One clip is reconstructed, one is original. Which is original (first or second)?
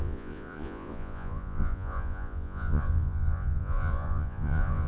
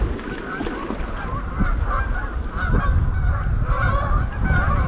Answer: second